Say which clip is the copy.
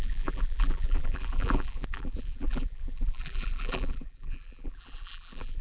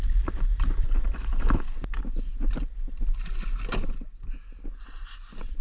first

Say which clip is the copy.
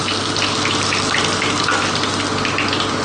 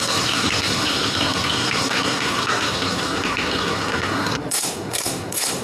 second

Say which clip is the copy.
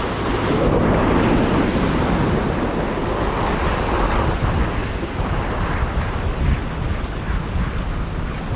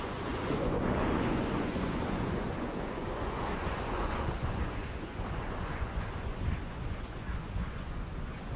second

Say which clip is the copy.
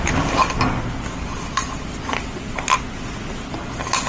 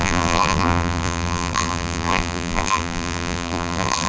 second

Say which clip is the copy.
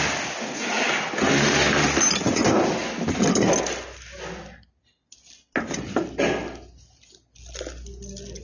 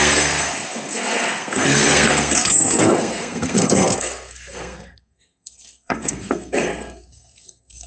second